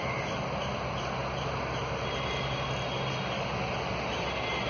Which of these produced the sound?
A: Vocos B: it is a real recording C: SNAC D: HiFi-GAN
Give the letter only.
B